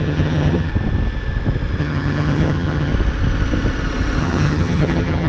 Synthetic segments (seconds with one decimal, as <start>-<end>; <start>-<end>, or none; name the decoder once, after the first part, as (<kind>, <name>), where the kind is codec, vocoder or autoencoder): 0.0-0.7 (vocoder, HiFi-GAN); 1.8-2.9; 4.2-5.3